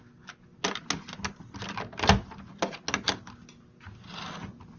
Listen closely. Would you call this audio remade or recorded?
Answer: recorded